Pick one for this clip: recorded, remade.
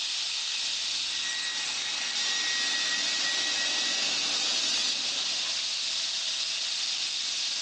recorded